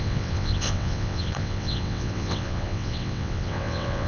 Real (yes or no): no